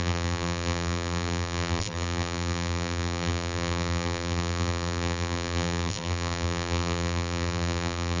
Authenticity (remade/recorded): remade